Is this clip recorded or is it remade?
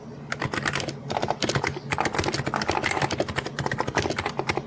recorded